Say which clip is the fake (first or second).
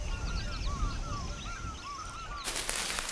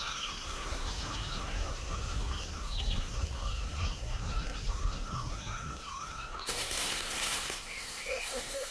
second